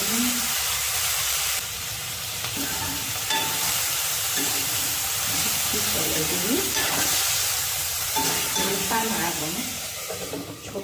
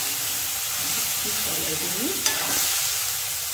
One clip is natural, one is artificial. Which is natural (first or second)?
second